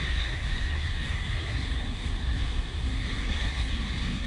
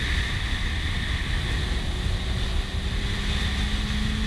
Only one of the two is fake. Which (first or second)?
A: first